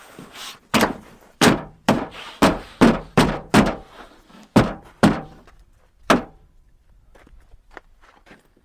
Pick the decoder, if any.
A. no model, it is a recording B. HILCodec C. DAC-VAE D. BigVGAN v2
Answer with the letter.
D